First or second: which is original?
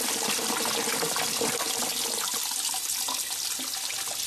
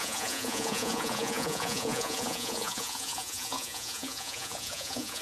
first